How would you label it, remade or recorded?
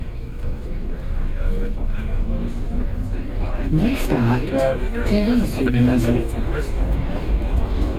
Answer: remade